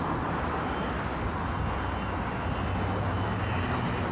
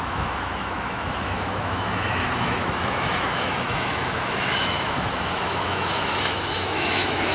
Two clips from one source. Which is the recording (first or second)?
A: first